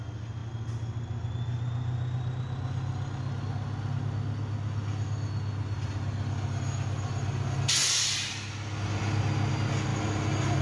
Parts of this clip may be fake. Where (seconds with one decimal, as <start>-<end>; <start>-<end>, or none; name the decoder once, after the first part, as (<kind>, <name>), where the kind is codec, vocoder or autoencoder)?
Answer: none